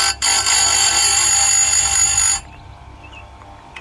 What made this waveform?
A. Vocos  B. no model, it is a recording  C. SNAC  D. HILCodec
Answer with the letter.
B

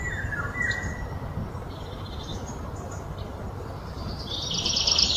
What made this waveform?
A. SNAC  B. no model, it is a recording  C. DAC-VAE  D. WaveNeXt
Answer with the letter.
B